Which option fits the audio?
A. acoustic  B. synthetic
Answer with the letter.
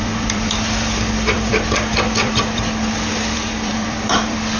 B